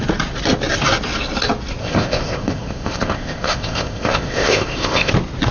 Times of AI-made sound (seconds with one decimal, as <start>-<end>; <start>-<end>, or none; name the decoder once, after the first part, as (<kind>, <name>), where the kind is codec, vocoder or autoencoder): 1.8-5.1 (codec, ZipCodec)